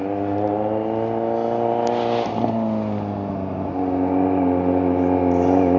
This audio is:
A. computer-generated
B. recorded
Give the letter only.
B